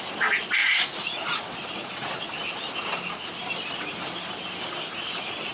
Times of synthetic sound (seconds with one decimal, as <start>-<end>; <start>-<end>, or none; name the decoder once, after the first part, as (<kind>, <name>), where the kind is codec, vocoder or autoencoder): 0.6-1.4 (vocoder, Vocos)